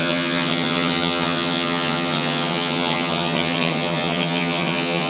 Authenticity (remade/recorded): remade